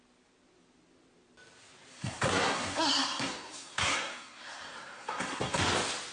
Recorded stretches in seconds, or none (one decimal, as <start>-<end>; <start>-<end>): 0.0-1.9; 5.6-6.1